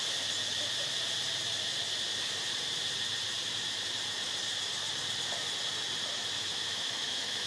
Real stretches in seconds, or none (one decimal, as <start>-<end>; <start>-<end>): 0.0-6.4